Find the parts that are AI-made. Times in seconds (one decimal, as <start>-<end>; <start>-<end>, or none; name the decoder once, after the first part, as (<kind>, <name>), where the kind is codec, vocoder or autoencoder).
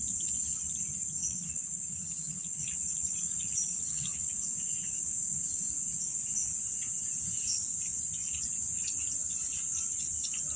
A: 1.2-4.3 (vocoder, Vocos)